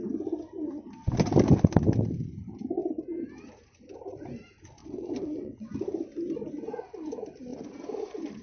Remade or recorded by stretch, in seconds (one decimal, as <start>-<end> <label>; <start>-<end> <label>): 0.0-4.8 recorded; 4.8-5.7 remade; 5.7-8.4 recorded